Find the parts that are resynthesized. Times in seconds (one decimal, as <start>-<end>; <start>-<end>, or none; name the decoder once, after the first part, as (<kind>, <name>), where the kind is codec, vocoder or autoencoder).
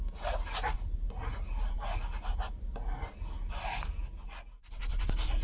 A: none